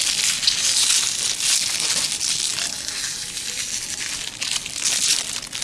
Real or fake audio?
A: real